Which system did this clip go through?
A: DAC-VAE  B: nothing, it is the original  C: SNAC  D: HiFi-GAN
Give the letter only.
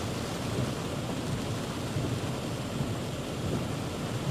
B